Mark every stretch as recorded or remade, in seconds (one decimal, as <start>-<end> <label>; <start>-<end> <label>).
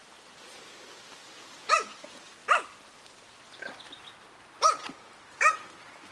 0.0-6.1 recorded